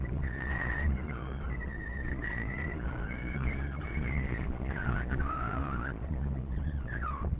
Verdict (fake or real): fake